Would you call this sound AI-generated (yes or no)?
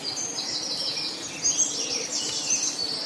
no